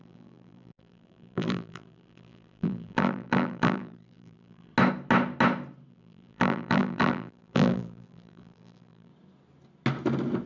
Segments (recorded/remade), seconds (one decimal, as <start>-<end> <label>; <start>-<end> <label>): 0.0-4.7 remade; 4.7-5.9 recorded; 5.9-9.1 remade; 9.1-10.5 recorded